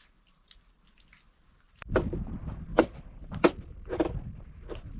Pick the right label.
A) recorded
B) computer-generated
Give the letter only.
A